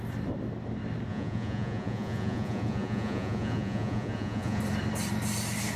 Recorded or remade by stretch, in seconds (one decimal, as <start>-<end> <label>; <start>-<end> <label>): 0.0-1.1 recorded; 1.1-4.6 remade; 4.6-5.8 recorded